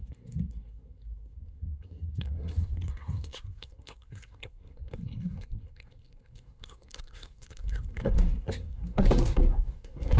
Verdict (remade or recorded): remade